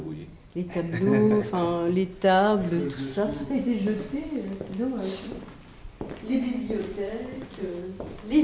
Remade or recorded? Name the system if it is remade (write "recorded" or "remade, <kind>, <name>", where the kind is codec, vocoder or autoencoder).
recorded